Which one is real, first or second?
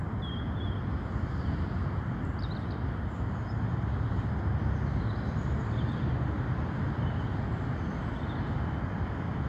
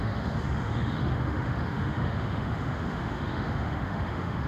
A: first